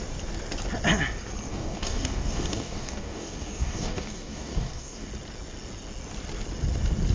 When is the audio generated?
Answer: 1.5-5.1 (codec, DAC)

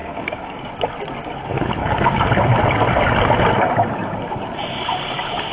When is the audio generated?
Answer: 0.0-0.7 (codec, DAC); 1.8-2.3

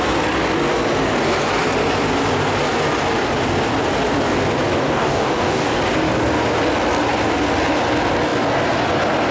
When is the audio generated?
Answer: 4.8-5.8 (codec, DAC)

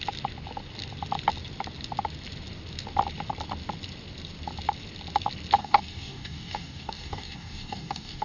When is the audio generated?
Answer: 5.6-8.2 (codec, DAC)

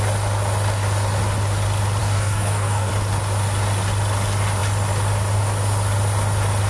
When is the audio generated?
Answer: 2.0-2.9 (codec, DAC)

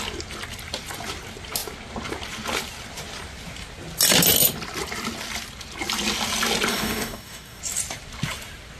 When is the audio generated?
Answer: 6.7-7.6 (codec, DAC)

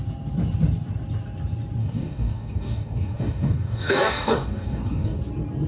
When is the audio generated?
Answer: 1.8-5.2 (codec, DAC)